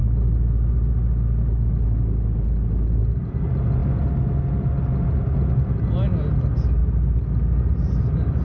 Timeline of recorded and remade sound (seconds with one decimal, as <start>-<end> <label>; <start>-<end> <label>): 0.0-8.4 recorded